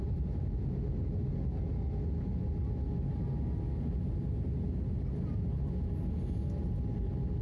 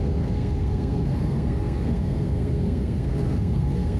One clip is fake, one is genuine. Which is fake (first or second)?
second